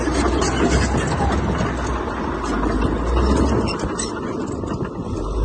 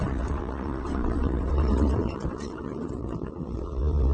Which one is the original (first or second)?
first